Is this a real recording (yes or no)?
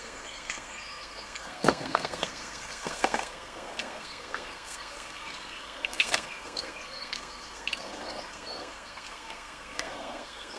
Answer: no